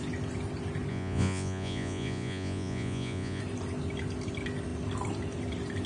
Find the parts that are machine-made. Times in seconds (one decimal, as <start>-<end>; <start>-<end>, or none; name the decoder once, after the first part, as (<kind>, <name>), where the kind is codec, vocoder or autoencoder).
0.9-3.4 (vocoder, Vocos)